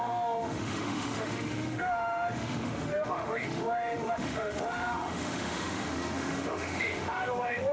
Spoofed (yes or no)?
yes